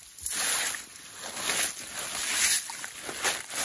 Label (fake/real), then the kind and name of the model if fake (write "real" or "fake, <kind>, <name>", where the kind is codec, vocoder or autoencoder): real